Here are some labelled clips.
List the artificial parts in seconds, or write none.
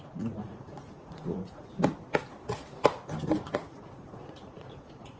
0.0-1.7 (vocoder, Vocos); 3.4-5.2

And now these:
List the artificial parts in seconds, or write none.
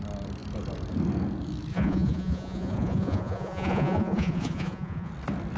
1.7-5.1 (vocoder, Vocos)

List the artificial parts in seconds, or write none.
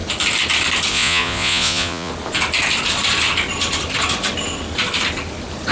0.9-2.1 (vocoder, Vocos)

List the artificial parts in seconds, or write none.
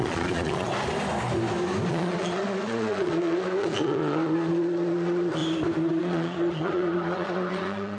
0.0-0.7 (vocoder, Vocos); 1.9-5.4; 6.0-8.0